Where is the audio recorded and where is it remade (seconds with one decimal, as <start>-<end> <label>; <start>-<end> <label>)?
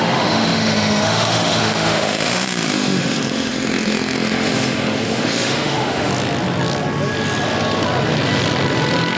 0.0-6.1 remade; 6.1-9.2 recorded